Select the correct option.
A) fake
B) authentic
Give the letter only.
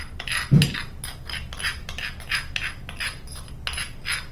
B